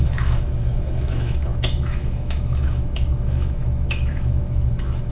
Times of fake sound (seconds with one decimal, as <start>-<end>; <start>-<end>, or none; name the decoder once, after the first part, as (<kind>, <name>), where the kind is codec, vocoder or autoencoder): 0.0-5.1 (autoencoder, DAC-VAE)